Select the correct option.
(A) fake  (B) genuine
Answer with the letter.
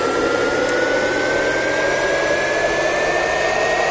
B